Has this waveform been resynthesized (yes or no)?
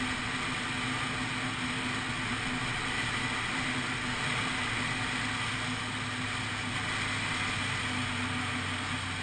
no